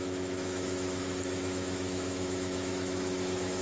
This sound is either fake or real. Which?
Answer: fake